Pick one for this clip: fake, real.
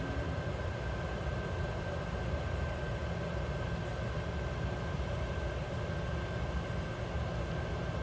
real